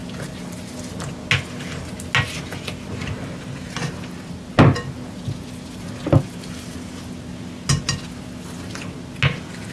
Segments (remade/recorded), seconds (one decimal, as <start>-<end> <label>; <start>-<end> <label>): 0.0-9.7 recorded